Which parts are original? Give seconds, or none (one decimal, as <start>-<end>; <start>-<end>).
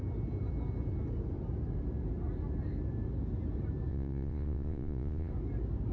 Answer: 0.0-3.9; 5.3-5.9